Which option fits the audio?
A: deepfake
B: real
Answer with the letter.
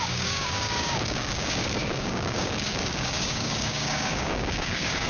A